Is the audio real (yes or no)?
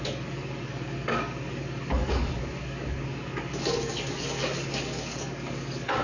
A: no